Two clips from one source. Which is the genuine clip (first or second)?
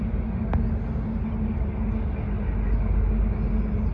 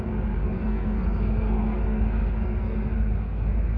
first